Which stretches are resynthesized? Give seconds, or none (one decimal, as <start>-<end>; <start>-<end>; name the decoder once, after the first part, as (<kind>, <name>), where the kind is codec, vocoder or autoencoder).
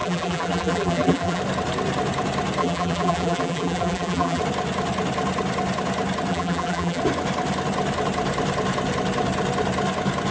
0.0-1.4 (vocoder, BigVGAN v2); 2.6-4.4; 6.3-7.0